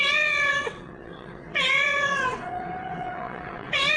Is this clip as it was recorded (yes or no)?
no